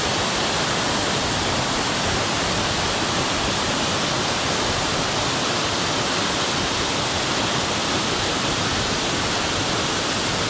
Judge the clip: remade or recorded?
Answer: recorded